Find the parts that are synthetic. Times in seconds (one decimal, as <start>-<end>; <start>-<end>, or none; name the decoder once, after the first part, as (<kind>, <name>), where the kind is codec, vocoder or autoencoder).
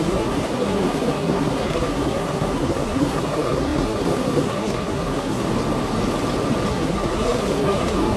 0.0-5.5 (codec, SNAC); 6.7-8.2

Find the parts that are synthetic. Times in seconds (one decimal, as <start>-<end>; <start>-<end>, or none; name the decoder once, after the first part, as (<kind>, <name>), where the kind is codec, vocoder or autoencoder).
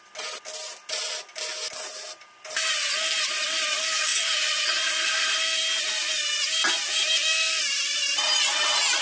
4.1-4.9 (vocoder, Vocos)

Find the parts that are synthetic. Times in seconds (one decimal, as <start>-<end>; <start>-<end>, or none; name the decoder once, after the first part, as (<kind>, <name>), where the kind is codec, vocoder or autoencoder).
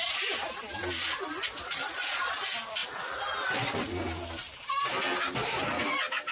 1.6-2.3 (vocoder, Vocos)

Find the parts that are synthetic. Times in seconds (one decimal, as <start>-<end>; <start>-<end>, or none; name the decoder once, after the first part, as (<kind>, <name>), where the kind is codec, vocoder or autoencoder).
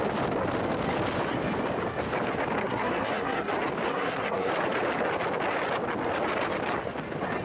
2.6-3.5 (codec, SNAC); 3.9-4.5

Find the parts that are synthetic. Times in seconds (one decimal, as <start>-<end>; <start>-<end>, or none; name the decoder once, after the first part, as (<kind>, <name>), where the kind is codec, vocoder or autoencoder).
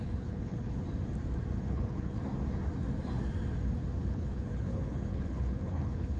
0.0-0.8 (codec, HILCodec); 1.6-2.2; 4.0-6.2